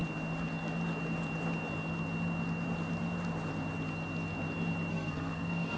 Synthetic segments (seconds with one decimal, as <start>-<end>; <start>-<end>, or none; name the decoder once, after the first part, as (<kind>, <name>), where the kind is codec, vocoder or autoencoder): 4.9-5.8 (codec, SNAC)